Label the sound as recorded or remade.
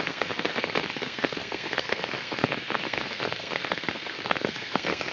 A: remade